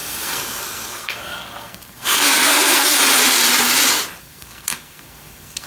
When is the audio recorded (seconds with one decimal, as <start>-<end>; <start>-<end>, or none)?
2.9-4.2